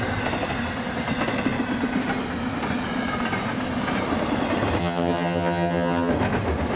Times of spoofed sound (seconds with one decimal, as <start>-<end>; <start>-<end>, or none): 4.8-6.1